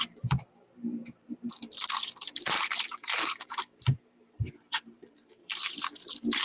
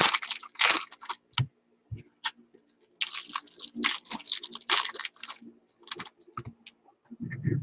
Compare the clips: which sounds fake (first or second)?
first